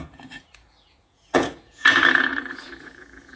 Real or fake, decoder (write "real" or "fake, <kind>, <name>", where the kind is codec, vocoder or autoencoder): fake, vocoder, Vocos